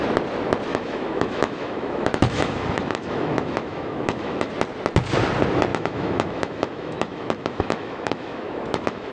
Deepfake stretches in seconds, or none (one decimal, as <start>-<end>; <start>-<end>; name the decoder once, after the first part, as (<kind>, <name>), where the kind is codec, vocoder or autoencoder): 0.7-4.5 (autoencoder, DAC-VAE); 5.7-9.1